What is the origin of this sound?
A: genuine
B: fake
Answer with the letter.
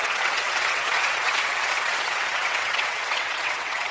B